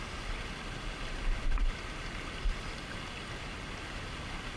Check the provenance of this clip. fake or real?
real